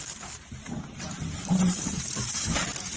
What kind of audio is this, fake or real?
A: fake